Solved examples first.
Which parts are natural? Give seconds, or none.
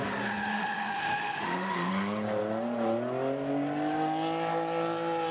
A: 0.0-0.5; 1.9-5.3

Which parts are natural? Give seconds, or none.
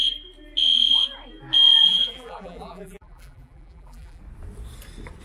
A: 0.0-1.8; 4.2-5.2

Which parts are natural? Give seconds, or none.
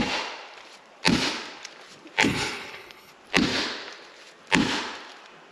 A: 0.0-2.2; 3.1-5.5